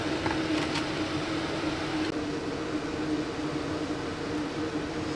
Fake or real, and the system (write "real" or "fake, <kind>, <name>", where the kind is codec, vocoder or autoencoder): real